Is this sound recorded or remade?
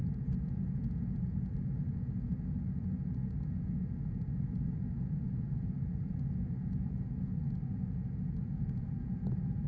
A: remade